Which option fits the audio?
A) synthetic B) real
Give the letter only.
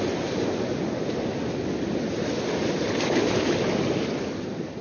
B